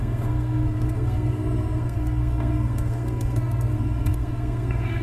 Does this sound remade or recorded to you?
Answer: remade